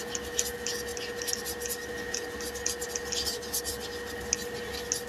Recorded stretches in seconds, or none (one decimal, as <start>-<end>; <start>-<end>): 0.0-5.1